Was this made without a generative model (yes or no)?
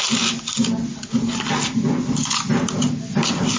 yes